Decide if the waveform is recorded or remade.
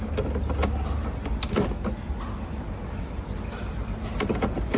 recorded